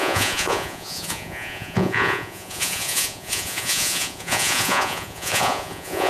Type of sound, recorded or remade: remade